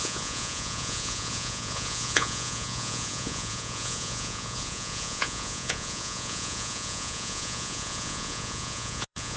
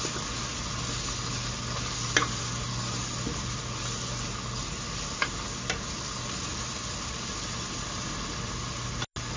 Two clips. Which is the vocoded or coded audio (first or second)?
first